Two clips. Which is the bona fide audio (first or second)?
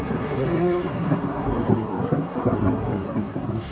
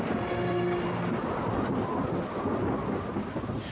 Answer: second